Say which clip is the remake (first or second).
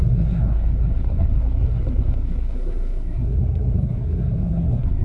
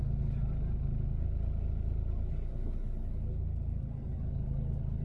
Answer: first